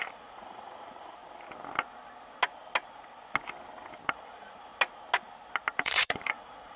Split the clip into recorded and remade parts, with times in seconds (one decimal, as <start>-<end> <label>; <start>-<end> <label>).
0.0-1.2 remade; 1.2-4.1 recorded; 4.1-4.7 remade; 4.7-5.8 recorded; 5.8-6.8 remade